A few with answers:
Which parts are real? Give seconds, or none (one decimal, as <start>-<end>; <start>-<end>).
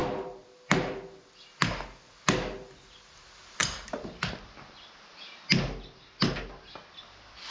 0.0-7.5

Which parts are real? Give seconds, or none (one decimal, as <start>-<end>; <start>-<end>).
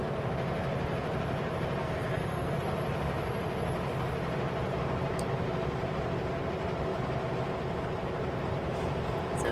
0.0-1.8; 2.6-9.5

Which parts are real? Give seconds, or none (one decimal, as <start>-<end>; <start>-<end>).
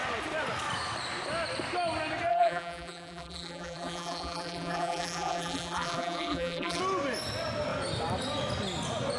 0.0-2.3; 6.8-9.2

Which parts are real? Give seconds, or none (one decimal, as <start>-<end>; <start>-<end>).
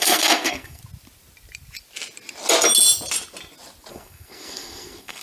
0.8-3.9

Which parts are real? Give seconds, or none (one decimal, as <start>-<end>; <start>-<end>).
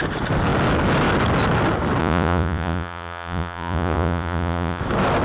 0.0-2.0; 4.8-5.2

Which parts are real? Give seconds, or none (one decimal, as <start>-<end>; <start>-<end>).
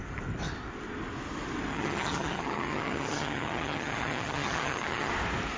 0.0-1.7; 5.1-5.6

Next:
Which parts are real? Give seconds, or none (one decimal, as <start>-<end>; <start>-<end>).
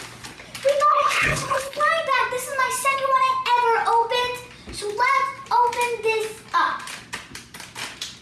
0.0-0.9; 1.8-8.2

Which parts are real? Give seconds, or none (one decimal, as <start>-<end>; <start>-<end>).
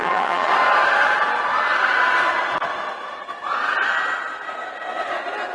0.5-5.5